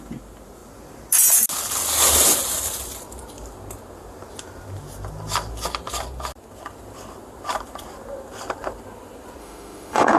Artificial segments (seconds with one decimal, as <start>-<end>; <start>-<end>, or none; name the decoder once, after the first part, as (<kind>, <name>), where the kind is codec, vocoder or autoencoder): 9.4-10.2 (autoencoder, DAC-VAE)